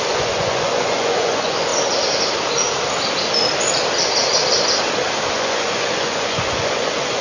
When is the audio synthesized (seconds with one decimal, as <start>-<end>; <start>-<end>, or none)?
0.0-1.7; 5.3-7.2